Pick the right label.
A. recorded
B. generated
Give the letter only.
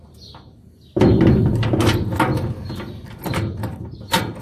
A